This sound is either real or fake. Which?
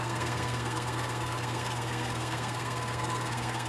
fake